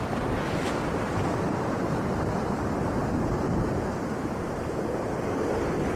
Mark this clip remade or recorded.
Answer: recorded